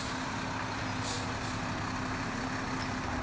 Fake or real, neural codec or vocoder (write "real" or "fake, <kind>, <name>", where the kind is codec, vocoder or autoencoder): real